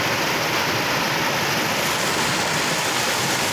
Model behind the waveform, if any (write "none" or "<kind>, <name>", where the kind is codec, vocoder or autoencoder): none